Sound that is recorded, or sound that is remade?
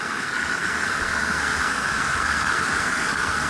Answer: remade